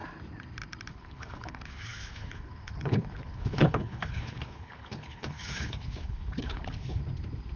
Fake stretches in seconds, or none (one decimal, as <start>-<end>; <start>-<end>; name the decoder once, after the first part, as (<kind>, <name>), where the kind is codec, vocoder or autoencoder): 0.9-7.0 (codec, HILCodec)